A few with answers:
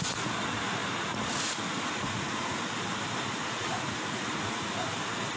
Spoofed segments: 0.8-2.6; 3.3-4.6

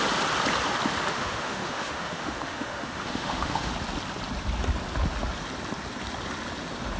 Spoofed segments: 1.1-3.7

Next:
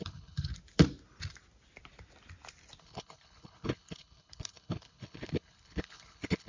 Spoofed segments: 0.0-0.5; 2.8-6.5

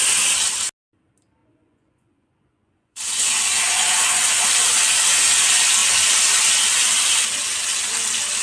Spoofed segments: 1.4-4.5

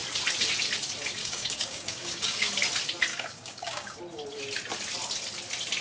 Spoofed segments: 1.2-2.5; 3.1-4.0

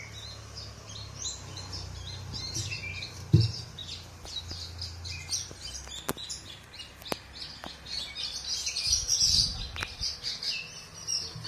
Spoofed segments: none